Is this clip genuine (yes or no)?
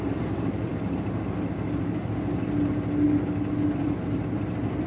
yes